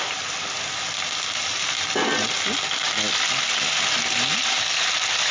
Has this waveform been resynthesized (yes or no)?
no